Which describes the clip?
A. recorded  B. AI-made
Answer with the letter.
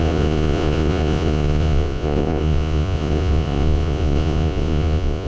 B